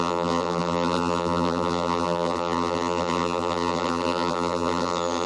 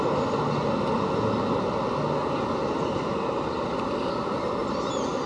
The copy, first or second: first